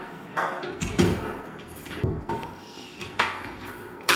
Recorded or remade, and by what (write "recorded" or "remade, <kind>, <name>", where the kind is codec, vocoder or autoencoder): remade, codec, SNAC